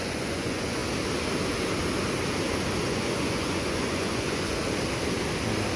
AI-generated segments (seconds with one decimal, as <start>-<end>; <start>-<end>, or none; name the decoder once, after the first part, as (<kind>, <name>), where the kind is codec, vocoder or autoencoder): 0.0-0.8 (vocoder, Vocos); 2.8-4.6